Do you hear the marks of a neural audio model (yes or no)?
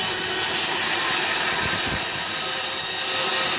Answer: no